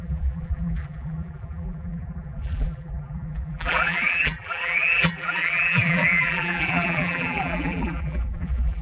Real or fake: fake